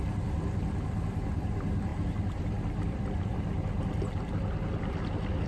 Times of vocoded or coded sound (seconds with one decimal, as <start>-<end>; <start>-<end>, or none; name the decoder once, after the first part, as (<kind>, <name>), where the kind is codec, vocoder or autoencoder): 0.0-5.5 (vocoder, BigVGAN v2)